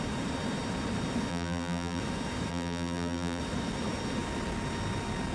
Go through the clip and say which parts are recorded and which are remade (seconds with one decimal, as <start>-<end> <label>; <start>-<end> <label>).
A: 0.0-1.3 recorded; 1.3-2.0 remade; 2.0-2.5 recorded; 2.5-3.4 remade; 3.4-5.3 recorded